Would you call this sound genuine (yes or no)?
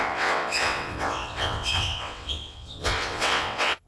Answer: no